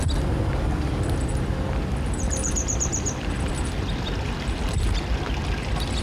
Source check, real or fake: real